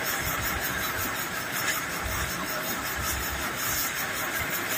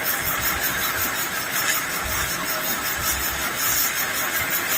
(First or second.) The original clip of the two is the second